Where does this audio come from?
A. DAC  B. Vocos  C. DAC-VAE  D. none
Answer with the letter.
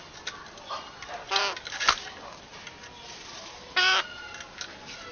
D